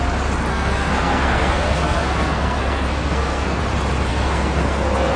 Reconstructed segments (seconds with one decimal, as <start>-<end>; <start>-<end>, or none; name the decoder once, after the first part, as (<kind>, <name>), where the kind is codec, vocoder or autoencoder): 0.5-3.6 (codec, SNAC); 4.1-5.2